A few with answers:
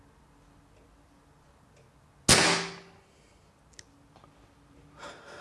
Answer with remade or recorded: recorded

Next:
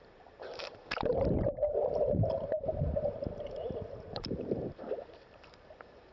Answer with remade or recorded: remade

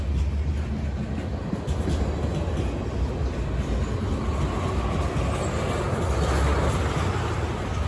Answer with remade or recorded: recorded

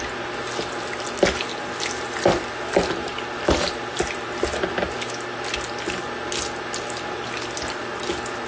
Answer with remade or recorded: recorded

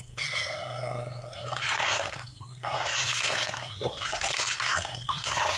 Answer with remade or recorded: remade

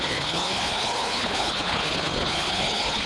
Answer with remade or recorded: remade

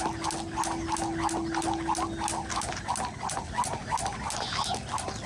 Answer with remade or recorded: recorded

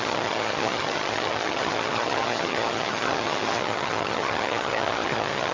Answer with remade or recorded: remade